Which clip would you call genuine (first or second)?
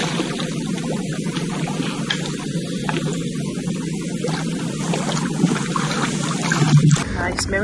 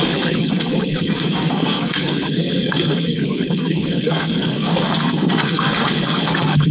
first